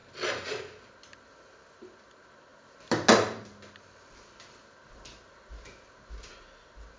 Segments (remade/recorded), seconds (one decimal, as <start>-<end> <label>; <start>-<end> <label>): 0.0-7.0 recorded